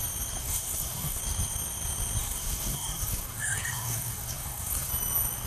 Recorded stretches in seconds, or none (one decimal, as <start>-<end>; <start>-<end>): 0.0-0.4; 1.2-2.2; 4.9-5.5